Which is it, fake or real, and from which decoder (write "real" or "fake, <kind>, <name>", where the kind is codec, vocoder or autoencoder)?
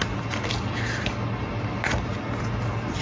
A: real